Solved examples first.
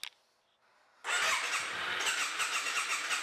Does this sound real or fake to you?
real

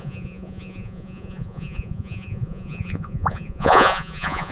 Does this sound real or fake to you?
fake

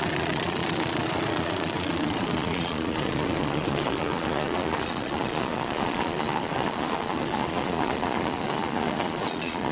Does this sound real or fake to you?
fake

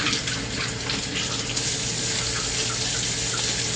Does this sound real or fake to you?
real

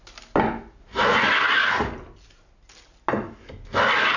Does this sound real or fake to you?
real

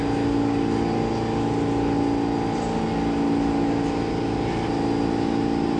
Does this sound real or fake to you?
real